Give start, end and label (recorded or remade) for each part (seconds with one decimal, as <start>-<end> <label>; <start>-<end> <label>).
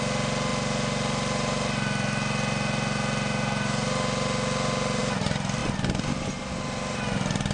0.0-7.5 recorded